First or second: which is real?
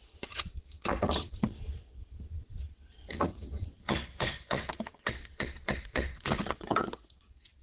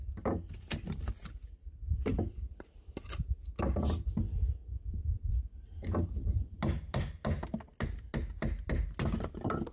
second